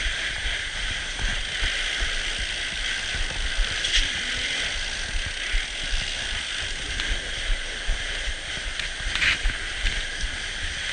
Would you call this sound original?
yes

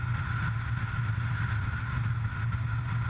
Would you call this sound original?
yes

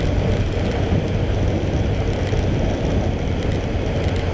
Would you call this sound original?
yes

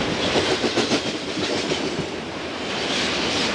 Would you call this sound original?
yes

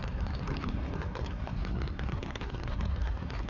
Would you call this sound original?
no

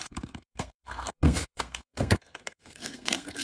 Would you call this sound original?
no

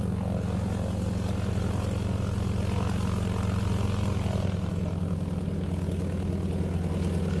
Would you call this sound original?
yes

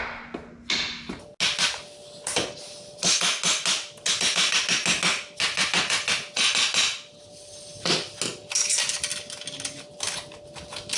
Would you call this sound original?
yes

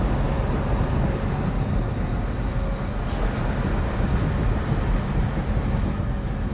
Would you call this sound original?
yes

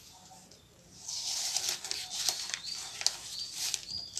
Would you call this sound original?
yes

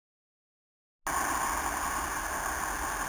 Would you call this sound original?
yes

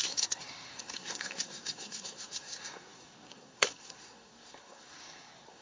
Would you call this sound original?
no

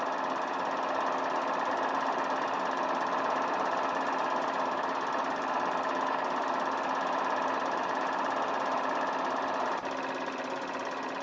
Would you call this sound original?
yes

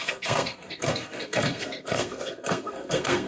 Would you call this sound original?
no